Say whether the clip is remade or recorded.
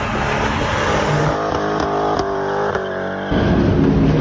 recorded